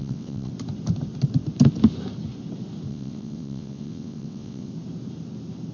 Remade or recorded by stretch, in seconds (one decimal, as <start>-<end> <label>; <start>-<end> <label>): 0.0-0.5 remade; 0.5-2.9 recorded; 2.9-4.7 remade; 4.7-5.7 recorded